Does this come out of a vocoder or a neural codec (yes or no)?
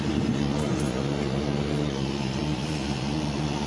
yes